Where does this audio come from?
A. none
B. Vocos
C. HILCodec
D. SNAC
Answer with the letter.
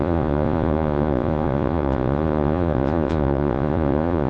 B